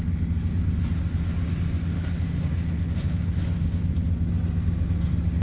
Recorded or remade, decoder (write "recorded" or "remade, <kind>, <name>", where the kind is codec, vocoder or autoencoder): recorded